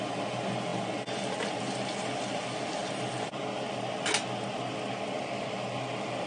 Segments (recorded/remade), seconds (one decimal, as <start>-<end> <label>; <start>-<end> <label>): 0.0-6.3 recorded